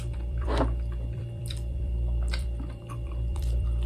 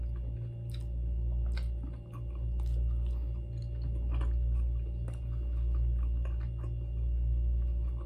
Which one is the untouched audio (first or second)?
second